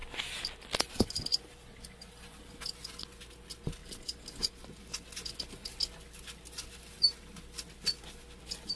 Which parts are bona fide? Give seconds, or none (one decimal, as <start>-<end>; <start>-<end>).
0.7-1.3; 2.3-8.8